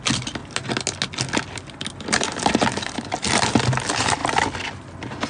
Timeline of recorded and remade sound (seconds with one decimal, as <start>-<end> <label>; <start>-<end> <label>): 0.0-5.3 recorded